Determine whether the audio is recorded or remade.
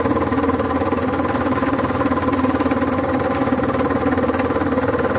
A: recorded